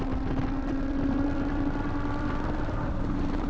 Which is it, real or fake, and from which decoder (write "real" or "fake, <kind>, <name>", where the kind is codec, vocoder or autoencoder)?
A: fake, vocoder, BigVGAN v2